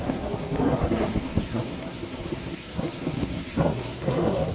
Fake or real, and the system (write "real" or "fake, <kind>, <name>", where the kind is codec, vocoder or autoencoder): fake, codec, SNAC